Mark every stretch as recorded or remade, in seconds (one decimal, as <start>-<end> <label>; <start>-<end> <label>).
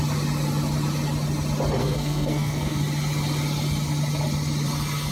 0.0-1.8 recorded; 1.8-2.8 remade; 2.8-5.1 recorded